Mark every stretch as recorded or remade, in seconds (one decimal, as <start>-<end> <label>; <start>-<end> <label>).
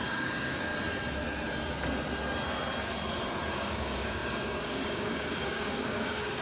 0.0-0.7 remade; 0.7-3.5 recorded; 3.5-6.4 remade